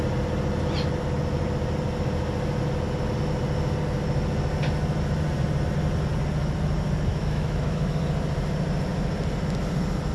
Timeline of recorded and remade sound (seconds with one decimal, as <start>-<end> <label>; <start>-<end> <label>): 0.0-7.1 recorded; 7.1-8.0 remade; 8.0-10.1 recorded